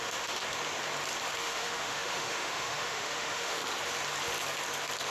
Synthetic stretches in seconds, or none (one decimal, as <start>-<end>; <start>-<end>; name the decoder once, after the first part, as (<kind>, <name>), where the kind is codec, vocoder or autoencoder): 0.0-0.4 (autoencoder, DAC-VAE); 1.4-3.6

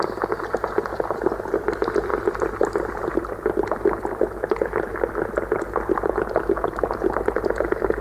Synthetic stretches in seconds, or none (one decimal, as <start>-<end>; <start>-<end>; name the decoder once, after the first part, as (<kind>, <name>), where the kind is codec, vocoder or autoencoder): none